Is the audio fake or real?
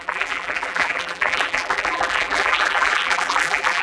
fake